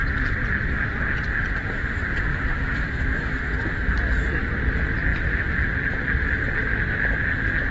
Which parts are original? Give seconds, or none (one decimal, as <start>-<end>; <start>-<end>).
0.0-2.3; 3.4-7.7